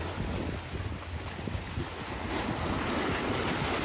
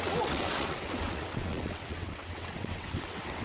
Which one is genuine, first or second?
first